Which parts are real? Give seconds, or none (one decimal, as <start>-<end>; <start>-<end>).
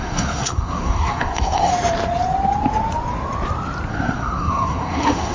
1.7-3.9